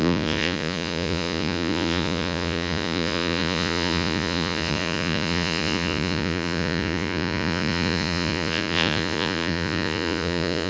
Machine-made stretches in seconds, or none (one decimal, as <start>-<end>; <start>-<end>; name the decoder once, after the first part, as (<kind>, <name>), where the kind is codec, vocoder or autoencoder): 0.0-10.7 (vocoder, Vocos)